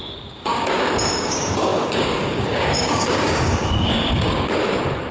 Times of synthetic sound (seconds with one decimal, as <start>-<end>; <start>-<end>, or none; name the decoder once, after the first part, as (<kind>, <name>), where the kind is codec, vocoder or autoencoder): 0.0-5.1 (codec, DAC)